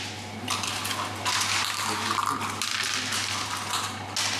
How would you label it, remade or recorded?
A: recorded